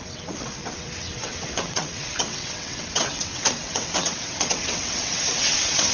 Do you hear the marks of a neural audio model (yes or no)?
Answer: yes